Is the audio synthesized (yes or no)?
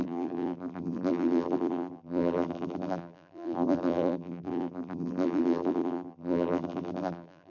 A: yes